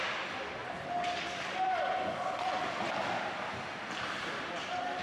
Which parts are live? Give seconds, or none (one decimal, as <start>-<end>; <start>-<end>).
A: 0.0-0.6; 1.8-5.0